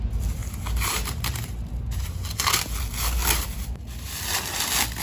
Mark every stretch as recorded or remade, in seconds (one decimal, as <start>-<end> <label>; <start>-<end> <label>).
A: 0.0-0.4 recorded; 0.4-2.5 remade; 2.5-5.0 recorded